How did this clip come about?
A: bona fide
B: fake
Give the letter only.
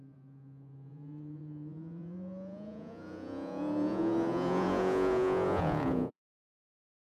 B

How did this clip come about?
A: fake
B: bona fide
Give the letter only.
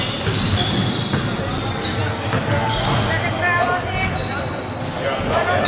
B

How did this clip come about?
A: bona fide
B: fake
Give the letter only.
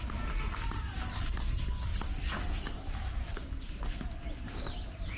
A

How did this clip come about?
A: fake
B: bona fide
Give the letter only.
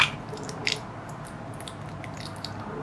B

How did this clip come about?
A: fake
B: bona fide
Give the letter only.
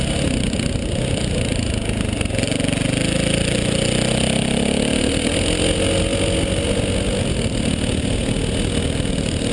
B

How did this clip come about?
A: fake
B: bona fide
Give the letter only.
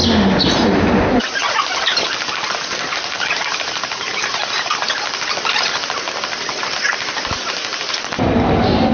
B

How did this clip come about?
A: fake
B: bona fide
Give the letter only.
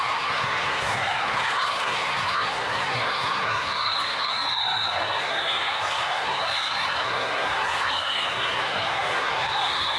A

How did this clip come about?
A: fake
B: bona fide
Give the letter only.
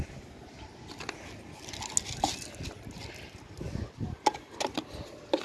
B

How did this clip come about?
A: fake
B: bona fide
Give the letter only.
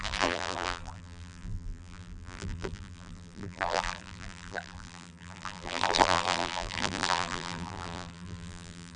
A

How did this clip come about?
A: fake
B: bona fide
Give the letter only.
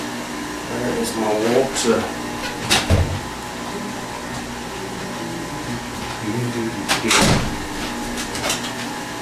B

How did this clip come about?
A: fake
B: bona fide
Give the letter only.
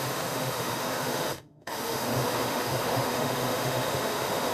A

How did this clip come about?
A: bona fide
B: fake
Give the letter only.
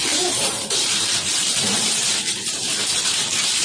B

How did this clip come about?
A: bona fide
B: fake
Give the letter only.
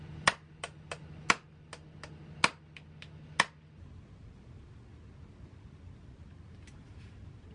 A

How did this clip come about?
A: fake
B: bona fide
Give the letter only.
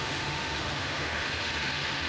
A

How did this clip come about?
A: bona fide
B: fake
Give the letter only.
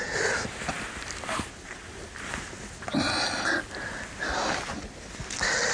A